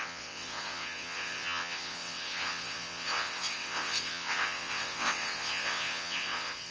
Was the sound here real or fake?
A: fake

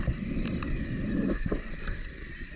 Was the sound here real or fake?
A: fake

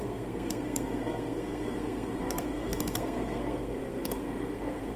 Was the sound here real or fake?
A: fake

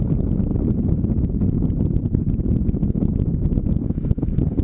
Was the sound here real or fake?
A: real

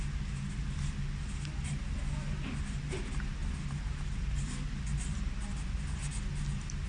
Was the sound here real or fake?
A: real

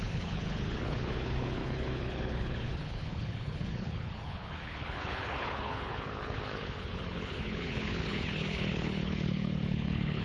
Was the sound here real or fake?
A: fake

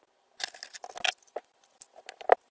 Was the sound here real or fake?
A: real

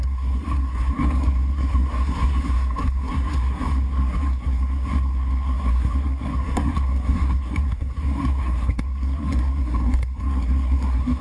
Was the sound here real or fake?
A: fake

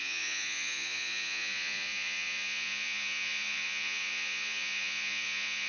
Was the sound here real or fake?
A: fake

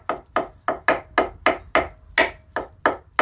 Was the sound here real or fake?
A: real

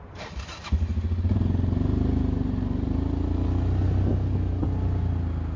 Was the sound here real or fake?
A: real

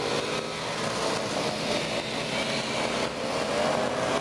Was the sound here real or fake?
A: real